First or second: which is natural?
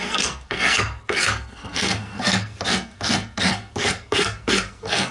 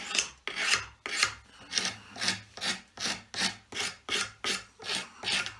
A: second